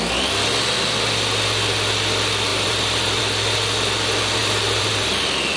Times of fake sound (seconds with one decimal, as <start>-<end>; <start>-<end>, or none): 2.5-3.2; 4.4-5.1